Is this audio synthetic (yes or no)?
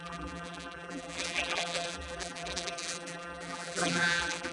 yes